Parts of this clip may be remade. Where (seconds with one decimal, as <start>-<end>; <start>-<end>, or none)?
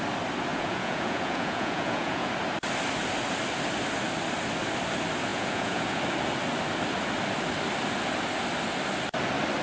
0.5-2.3; 5.3-6.0